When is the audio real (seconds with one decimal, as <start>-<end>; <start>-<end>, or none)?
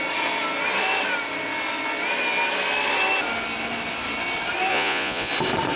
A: 0.0-4.7; 5.3-5.8